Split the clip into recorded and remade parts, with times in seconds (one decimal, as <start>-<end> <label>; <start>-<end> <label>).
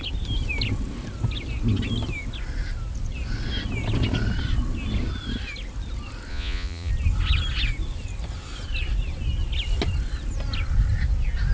0.0-6.3 recorded; 6.3-6.9 remade; 6.9-11.5 recorded